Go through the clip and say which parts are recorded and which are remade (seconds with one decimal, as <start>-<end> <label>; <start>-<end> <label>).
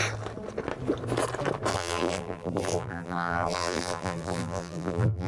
0.0-1.7 recorded; 1.7-5.3 remade